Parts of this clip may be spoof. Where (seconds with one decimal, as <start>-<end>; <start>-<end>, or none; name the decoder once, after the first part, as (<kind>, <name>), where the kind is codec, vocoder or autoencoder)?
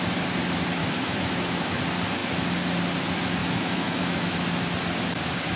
0.8-1.8 (autoencoder, DAC-VAE); 3.4-4.5